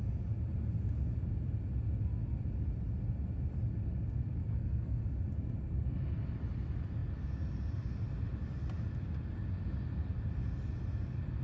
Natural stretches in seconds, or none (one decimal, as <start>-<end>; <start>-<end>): 0.0-4.4; 5.0-11.4